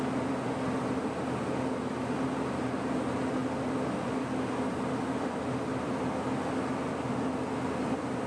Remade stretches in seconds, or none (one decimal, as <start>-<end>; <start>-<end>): none